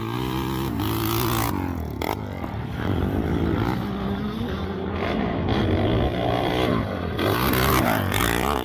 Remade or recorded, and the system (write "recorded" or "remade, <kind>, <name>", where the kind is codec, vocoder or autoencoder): recorded